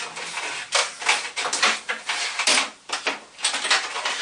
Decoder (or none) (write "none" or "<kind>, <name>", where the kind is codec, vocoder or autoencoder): none